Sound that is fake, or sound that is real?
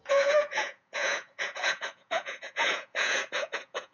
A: fake